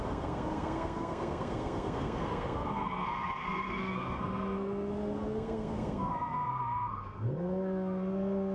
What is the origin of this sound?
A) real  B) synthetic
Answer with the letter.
B